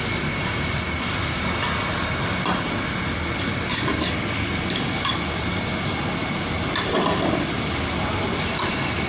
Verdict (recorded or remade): recorded